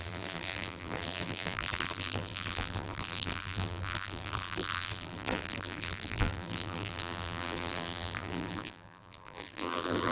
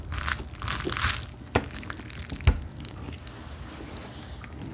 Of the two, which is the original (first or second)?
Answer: second